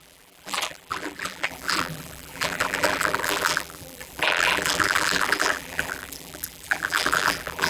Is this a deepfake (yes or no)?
yes